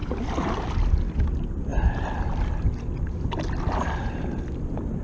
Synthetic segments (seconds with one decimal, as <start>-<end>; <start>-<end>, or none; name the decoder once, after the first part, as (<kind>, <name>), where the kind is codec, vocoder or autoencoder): 0.0-0.9 (vocoder, BigVGAN v2)